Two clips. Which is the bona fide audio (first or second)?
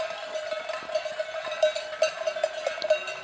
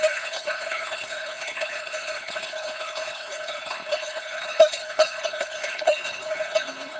first